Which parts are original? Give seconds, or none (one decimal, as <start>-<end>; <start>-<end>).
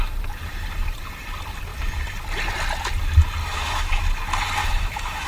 0.0-3.4; 4.0-4.6